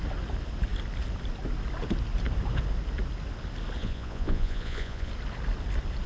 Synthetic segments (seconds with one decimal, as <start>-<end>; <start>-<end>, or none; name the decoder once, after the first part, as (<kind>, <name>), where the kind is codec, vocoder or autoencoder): 3.8-5.1 (vocoder, Vocos)